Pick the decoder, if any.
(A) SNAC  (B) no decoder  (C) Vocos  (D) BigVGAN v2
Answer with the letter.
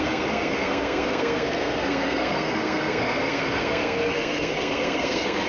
A